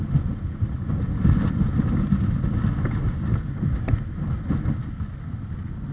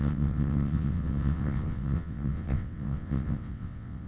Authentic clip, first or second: first